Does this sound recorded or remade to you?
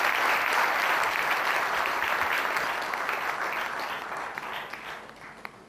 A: recorded